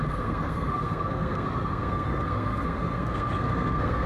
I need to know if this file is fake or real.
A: fake